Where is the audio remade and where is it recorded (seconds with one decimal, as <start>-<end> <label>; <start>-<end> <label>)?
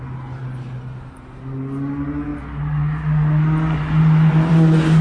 0.0-5.0 recorded